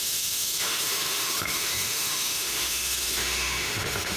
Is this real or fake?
fake